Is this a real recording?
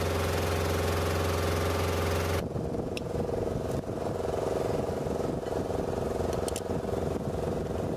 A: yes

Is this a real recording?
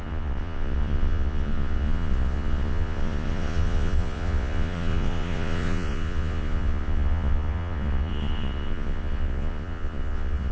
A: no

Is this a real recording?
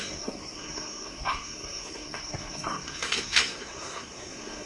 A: no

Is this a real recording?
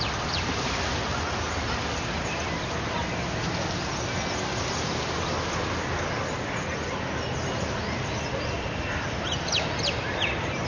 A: yes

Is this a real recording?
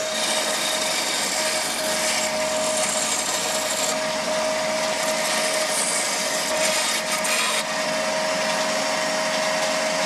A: yes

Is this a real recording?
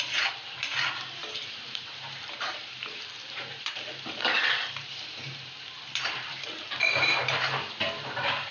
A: no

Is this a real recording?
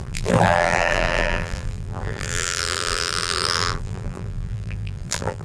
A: no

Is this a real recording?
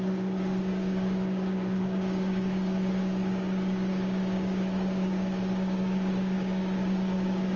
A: no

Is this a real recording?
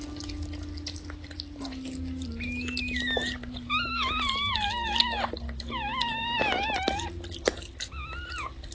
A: yes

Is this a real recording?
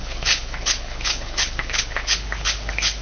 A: no